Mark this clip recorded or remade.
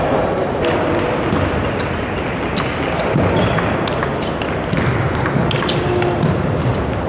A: recorded